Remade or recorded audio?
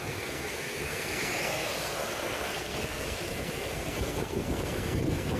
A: remade